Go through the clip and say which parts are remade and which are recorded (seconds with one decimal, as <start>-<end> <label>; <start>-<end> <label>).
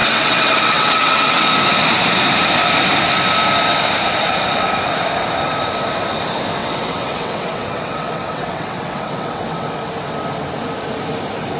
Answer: 0.0-1.5 remade; 1.5-6.6 recorded; 6.6-9.7 remade; 9.7-11.6 recorded